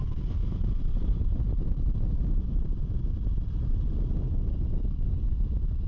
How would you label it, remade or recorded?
recorded